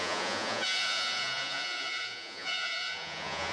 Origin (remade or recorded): remade